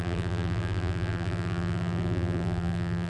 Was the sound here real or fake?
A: fake